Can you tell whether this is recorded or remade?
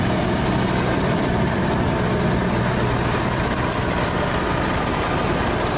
remade